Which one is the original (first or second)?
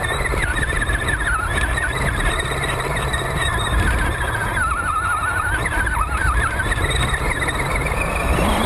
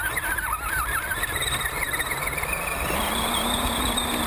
second